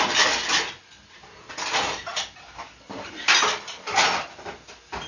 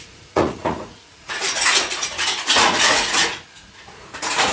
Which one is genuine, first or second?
first